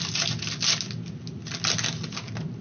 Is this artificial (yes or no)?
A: no